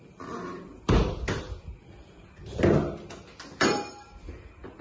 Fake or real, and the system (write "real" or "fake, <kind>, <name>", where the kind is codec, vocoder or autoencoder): real